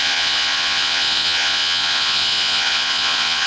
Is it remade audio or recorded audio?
remade